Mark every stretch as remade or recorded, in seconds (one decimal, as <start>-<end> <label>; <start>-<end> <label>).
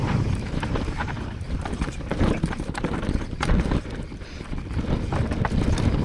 0.0-3.6 remade; 3.6-6.0 recorded